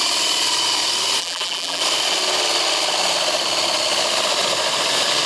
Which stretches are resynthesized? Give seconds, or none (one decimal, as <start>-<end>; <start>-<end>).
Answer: 1.2-1.8